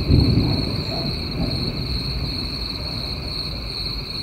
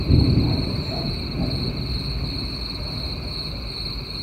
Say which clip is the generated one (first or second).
first